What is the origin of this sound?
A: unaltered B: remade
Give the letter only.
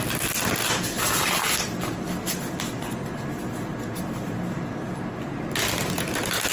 A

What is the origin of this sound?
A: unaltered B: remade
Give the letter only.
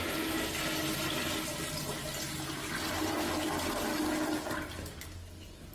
A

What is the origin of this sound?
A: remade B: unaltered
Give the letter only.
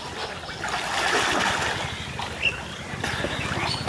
B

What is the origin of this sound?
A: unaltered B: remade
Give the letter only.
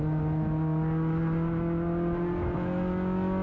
A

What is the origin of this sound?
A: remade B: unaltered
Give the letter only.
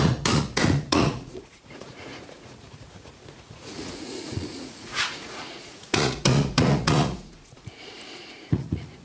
A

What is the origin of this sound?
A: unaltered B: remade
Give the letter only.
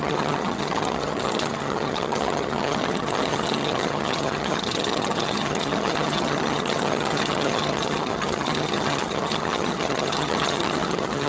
B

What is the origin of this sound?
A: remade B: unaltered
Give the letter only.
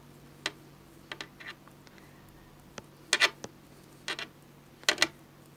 B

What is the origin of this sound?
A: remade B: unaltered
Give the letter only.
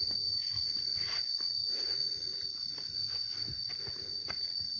B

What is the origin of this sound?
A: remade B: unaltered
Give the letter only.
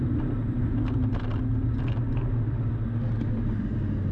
B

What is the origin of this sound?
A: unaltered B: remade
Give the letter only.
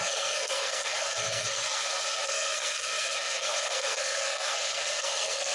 B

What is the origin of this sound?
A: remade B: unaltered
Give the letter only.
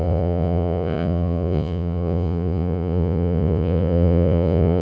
A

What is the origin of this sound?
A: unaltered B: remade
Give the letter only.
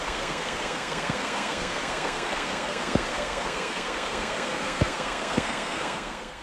B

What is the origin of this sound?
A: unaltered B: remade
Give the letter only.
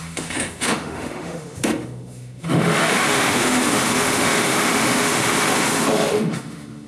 B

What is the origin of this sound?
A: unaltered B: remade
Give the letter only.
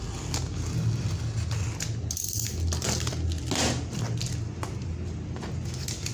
A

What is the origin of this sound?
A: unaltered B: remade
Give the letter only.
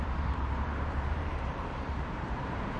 B